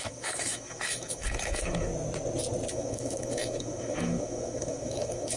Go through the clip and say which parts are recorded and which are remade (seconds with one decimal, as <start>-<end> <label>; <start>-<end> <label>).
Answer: 0.0-1.9 remade; 1.9-2.7 recorded; 2.7-5.4 remade